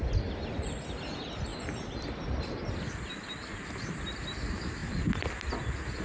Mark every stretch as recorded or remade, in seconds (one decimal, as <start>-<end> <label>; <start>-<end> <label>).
0.0-6.0 recorded